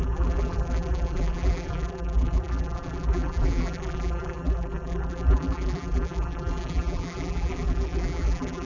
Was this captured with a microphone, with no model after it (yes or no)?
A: no